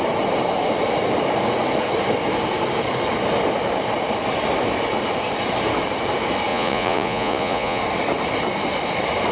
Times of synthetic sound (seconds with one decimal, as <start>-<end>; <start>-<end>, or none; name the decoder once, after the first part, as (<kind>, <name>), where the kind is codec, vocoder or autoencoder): 6.5-7.8 (vocoder, Vocos)